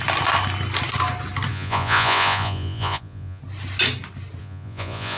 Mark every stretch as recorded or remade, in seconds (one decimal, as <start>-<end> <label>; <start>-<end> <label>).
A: 0.0-1.5 recorded; 1.5-3.4 remade; 3.4-4.4 recorded; 4.4-5.2 remade